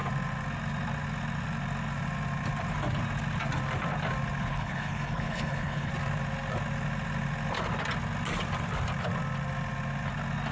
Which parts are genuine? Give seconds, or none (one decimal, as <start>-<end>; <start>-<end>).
0.0-4.4; 5.9-10.5